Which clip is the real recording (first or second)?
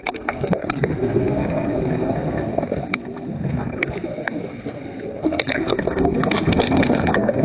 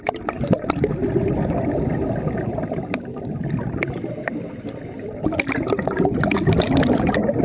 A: second